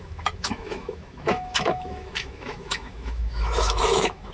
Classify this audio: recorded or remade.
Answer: remade